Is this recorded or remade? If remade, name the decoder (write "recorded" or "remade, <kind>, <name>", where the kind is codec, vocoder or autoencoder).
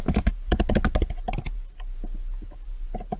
recorded